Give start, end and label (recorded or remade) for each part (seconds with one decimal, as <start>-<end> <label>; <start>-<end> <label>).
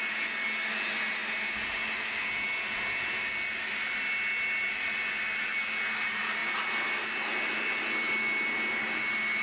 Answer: 0.0-9.4 recorded